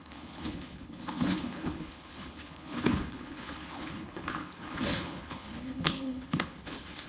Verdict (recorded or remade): remade